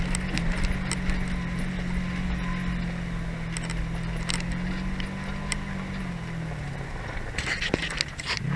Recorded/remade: recorded